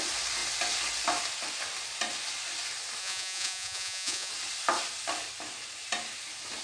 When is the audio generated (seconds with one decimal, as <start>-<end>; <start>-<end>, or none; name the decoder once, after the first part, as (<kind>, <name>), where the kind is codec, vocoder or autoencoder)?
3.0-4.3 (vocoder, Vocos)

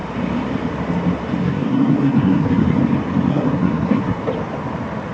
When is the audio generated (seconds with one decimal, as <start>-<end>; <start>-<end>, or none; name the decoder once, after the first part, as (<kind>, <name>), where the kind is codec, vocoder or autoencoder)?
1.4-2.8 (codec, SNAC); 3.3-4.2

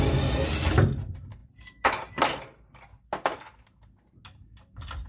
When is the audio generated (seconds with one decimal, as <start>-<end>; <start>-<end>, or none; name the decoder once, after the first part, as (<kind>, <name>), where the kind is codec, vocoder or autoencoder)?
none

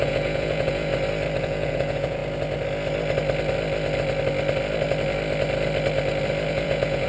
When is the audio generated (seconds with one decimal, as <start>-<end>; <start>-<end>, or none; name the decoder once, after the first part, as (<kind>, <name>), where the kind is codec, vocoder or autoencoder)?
0.0-0.9 (vocoder, Vocos); 1.4-2.2; 6.5-7.1

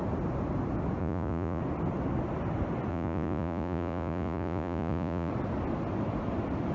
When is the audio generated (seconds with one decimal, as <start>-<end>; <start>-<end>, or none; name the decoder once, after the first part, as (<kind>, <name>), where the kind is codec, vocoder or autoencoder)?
1.0-1.6 (vocoder, Vocos); 2.9-5.3

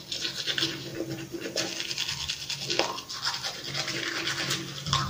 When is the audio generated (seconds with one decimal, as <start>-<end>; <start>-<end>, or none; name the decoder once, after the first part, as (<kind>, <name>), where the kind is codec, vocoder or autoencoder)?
none

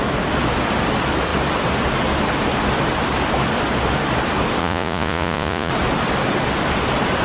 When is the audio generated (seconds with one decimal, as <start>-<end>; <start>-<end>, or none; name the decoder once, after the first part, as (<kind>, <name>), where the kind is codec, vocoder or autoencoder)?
4.6-5.7 (vocoder, Vocos)